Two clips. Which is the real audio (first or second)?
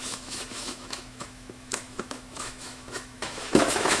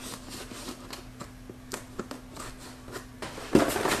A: second